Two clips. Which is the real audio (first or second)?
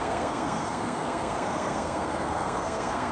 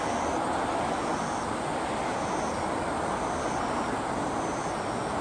second